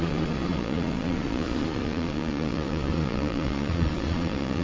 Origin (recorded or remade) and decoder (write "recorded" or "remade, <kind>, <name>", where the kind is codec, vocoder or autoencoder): remade, vocoder, Vocos